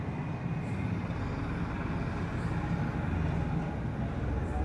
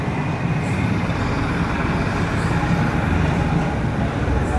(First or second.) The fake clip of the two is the second